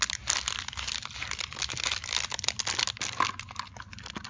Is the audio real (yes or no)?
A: yes